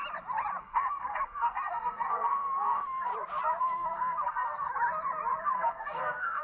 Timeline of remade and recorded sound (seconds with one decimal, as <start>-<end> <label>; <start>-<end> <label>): 0.0-0.6 recorded; 0.6-3.1 remade; 3.1-3.6 recorded; 3.6-4.7 remade; 4.7-5.4 recorded; 5.4-6.4 remade